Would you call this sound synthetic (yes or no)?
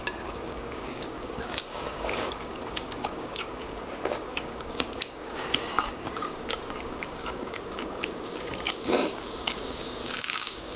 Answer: yes